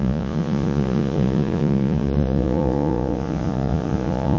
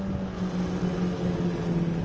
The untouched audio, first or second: second